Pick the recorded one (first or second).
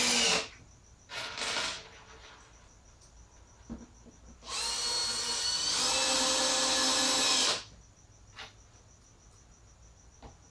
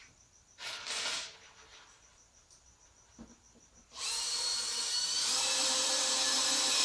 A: first